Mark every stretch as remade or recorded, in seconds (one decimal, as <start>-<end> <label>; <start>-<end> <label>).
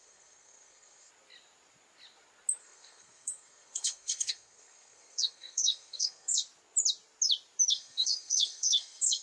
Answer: 0.0-1.1 remade; 1.1-2.6 recorded; 2.6-6.4 remade; 6.4-7.7 recorded; 7.7-9.2 remade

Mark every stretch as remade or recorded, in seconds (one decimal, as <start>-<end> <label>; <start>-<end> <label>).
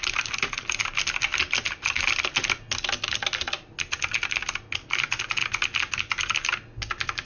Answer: 0.0-7.3 recorded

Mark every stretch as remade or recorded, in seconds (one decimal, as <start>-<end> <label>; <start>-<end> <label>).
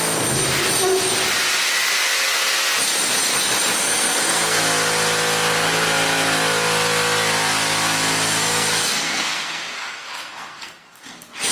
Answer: 0.0-3.8 recorded; 3.8-4.6 remade; 4.6-8.5 recorded; 8.5-11.5 remade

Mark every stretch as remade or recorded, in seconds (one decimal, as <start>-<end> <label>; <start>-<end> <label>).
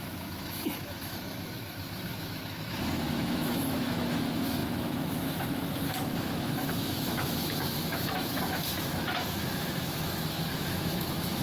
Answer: 0.0-11.4 remade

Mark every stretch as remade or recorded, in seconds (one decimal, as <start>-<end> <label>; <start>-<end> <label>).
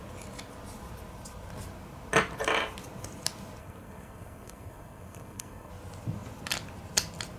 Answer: 0.0-3.6 recorded; 3.6-5.7 remade; 5.7-7.4 recorded